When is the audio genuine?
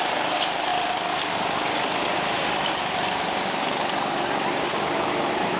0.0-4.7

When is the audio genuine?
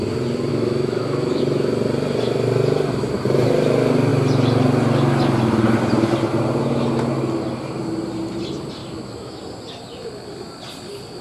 0.0-0.5; 1.4-8.8; 9.4-11.2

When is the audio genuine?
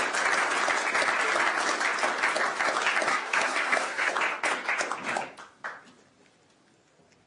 0.0-3.1; 4.1-7.3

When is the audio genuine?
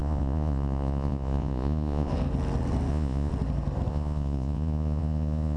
2.1-2.9; 3.3-3.9